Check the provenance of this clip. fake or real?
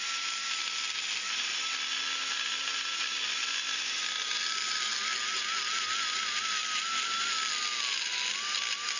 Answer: real